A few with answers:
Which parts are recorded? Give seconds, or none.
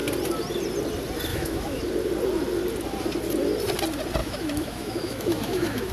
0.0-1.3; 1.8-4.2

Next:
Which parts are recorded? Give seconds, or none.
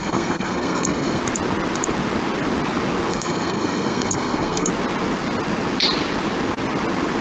1.2-3.1; 4.7-7.2